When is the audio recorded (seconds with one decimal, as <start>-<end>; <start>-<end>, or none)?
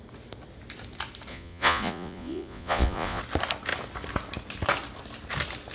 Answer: 0.0-1.3; 3.2-5.7